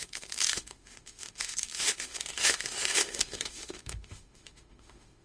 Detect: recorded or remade remade